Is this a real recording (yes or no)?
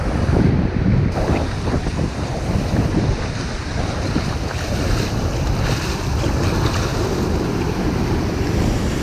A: no